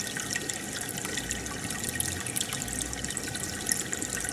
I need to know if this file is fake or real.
real